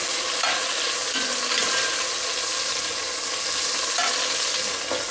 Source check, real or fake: real